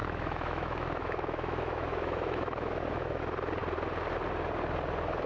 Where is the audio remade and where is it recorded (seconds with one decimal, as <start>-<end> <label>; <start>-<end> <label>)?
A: 0.0-3.2 remade; 3.2-5.3 recorded